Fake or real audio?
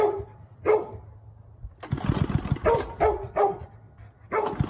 real